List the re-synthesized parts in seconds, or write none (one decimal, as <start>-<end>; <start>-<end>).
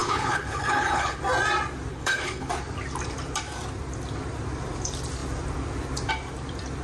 0.0-1.2; 1.9-2.5